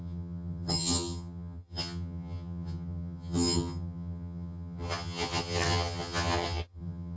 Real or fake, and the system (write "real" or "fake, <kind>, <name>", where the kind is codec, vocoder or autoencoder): fake, vocoder, HiFi-GAN